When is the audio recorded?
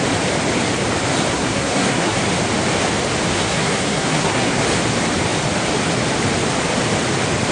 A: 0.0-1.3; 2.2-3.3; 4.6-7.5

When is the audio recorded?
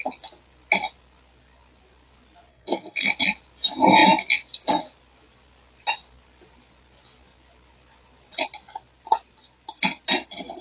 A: 0.0-2.5; 3.1-10.6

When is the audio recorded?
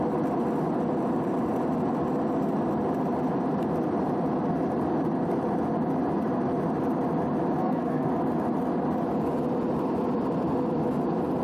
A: 0.0-7.6; 8.1-11.4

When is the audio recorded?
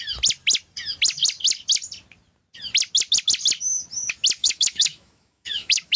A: 0.0-4.4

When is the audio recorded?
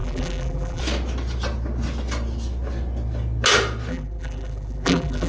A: 0.8-3.9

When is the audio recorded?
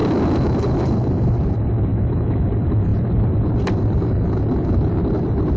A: 0.0-1.9; 2.5-5.6